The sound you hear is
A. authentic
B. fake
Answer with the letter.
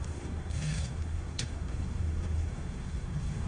B